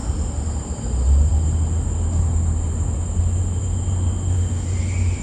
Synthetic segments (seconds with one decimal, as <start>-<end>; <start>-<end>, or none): none